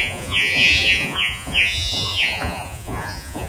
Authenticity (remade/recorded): remade